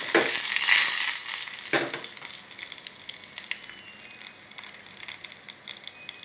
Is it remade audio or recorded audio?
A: recorded